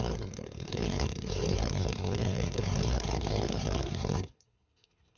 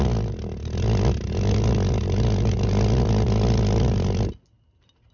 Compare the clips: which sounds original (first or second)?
second